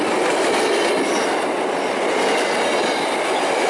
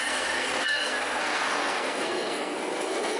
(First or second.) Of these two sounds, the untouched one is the first